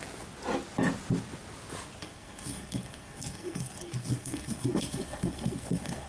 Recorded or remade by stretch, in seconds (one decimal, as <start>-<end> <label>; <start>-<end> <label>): 0.0-2.0 recorded; 2.0-6.1 remade